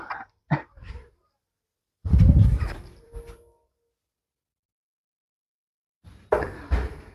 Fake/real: fake